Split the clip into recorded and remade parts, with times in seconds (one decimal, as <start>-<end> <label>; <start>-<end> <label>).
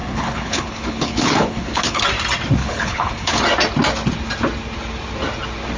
0.0-2.0 remade; 2.0-2.6 recorded; 2.6-3.4 remade; 3.4-5.8 recorded